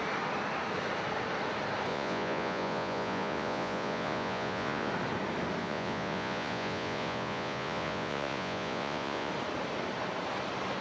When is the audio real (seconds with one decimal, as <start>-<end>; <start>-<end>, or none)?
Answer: 0.0-1.9; 4.9-5.6; 9.3-10.8